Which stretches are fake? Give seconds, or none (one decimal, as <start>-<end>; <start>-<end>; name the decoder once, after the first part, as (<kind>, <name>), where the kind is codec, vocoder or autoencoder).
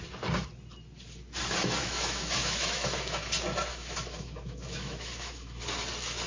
1.8-3.3 (autoencoder, DAC-VAE); 3.7-5.6